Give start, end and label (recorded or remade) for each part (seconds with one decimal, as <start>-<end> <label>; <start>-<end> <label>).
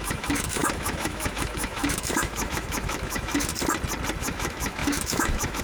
0.0-3.5 remade; 3.5-4.2 recorded; 4.2-5.6 remade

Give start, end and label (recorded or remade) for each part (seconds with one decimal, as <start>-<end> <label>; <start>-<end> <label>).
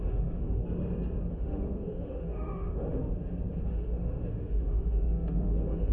0.0-0.6 remade; 0.6-1.3 recorded; 1.3-3.0 remade; 3.0-3.7 recorded; 3.7-5.9 remade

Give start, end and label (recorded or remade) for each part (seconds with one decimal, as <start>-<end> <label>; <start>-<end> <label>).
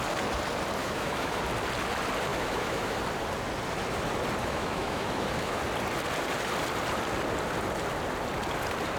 0.0-0.8 recorded; 0.8-1.4 remade; 1.4-2.3 recorded; 2.3-3.0 remade; 3.0-4.4 recorded; 4.4-5.6 remade; 5.6-9.0 recorded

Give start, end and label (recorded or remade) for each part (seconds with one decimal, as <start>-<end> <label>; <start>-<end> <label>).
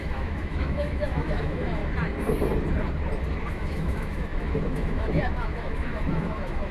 0.0-1.8 remade; 1.8-3.5 recorded; 3.5-6.7 remade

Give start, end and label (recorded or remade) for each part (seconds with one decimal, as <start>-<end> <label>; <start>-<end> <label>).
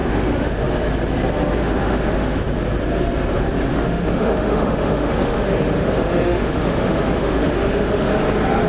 0.0-0.6 remade; 0.6-1.6 recorded; 1.6-2.6 remade; 2.6-3.7 recorded; 3.7-8.1 remade; 8.1-8.7 recorded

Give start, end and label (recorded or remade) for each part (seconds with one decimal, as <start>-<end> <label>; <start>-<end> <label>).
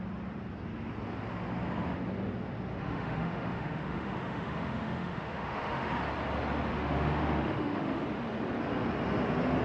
0.0-2.7 recorded; 2.7-5.9 remade; 5.9-6.7 recorded; 6.7-8.0 remade; 8.0-9.6 recorded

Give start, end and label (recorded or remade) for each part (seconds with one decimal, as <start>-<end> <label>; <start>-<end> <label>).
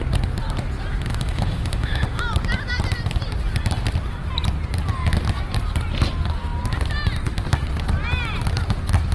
0.0-1.1 recorded; 1.1-2.2 remade; 2.2-9.1 recorded